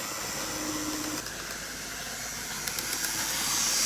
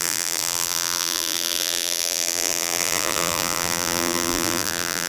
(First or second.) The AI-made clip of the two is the second